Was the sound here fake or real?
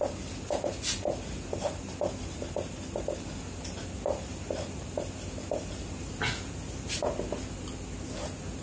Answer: real